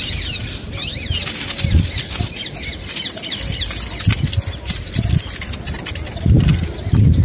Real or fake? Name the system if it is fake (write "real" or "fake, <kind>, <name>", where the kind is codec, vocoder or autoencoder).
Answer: real